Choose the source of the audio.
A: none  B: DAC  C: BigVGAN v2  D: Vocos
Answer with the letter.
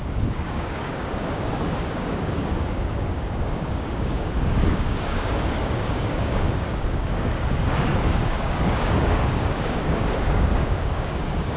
B